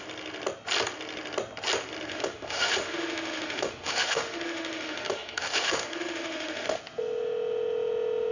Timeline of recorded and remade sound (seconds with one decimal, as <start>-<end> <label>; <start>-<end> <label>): 0.0-2.1 recorded; 2.1-6.8 remade; 6.8-8.3 recorded

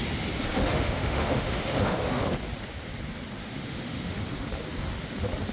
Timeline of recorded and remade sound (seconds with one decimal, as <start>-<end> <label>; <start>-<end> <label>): 0.0-0.6 recorded; 0.6-2.2 remade; 2.2-3.4 recorded; 3.4-4.2 remade; 4.2-5.5 recorded

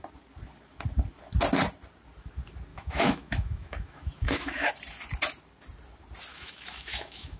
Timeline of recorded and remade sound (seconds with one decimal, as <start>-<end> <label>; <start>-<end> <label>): 0.0-2.7 recorded; 2.7-4.7 remade; 4.7-6.3 recorded; 6.3-7.4 remade